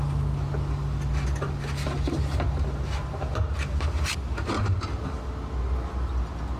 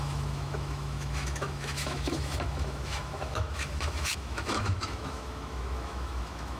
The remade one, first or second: second